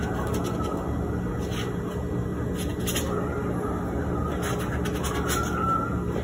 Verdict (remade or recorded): recorded